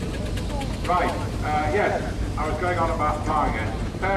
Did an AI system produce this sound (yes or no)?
no